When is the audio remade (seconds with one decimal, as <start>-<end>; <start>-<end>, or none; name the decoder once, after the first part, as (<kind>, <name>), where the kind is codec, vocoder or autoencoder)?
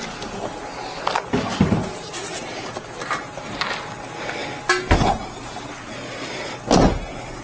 none